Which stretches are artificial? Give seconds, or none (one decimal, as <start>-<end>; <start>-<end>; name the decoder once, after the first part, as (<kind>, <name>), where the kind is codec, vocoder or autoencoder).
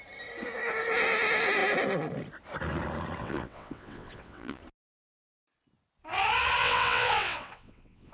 3.2-4.6 (vocoder, WaveNeXt); 6.6-8.1